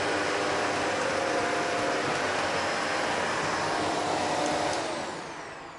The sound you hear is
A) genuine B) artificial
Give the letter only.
A